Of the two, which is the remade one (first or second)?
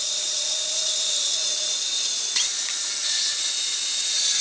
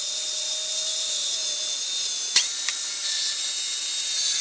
first